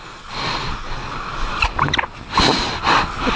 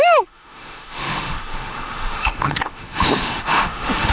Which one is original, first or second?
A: first